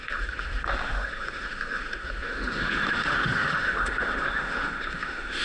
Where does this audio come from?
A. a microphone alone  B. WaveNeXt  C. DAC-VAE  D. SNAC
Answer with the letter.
C